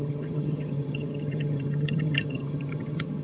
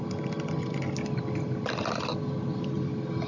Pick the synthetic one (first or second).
first